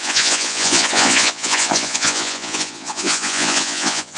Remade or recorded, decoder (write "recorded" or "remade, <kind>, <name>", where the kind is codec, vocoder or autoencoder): remade, vocoder, Vocos